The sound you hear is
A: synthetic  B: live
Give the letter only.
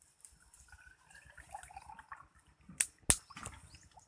B